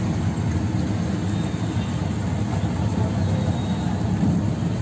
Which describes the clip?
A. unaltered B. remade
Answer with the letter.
A